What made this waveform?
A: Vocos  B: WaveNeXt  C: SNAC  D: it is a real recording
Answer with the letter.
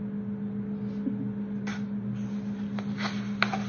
D